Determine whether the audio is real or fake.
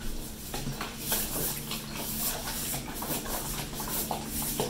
real